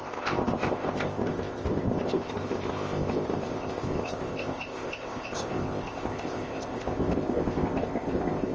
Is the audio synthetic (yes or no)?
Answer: yes